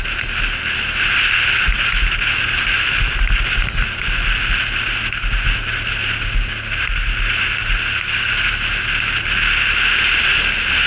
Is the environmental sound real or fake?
real